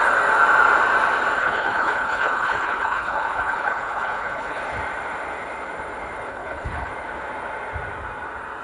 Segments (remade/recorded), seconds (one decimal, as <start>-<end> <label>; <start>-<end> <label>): 0.0-1.4 recorded; 1.4-4.6 remade; 4.6-6.3 recorded; 6.3-6.9 remade; 6.9-8.6 recorded